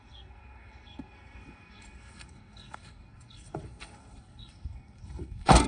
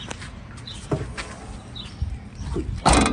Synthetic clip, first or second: first